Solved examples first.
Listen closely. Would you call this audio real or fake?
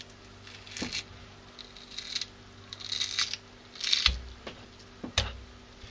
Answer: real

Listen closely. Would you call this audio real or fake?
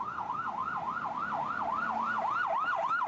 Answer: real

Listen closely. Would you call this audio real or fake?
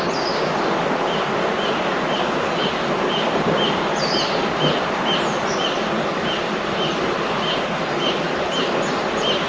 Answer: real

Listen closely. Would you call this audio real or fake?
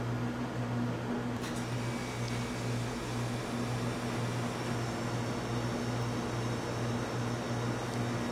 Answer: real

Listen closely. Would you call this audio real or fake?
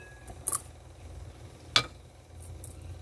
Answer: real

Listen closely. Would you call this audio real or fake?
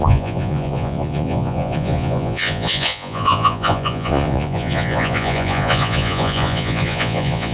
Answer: fake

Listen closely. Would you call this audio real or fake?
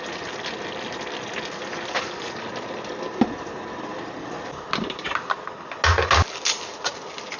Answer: real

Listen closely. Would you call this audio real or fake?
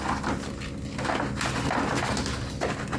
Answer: real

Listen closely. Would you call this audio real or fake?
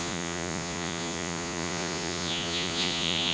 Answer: fake